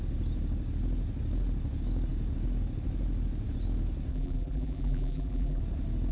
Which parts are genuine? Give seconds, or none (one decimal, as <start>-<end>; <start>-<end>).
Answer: 0.0-4.1; 5.6-6.1